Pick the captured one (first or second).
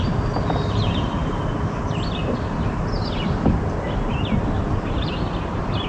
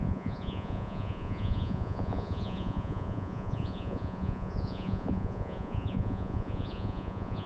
first